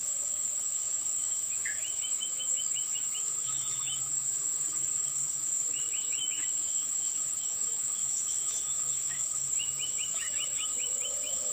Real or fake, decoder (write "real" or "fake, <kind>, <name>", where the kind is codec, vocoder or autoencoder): fake, autoencoder, DAC-VAE